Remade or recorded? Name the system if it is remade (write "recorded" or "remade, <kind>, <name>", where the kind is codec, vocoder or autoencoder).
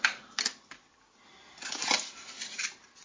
recorded